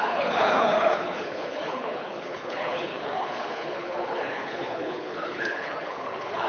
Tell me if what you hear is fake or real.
fake